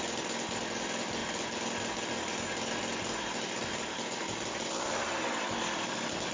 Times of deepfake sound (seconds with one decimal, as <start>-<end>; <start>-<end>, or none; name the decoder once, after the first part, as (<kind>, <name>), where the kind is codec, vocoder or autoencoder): none